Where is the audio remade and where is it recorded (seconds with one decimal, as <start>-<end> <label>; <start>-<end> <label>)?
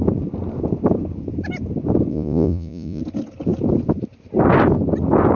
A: 0.0-2.1 recorded; 2.1-3.0 remade; 3.0-5.3 recorded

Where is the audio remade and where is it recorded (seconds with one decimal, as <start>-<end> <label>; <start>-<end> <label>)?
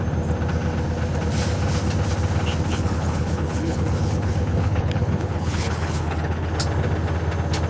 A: 0.0-2.7 recorded; 2.7-6.5 remade; 6.5-7.7 recorded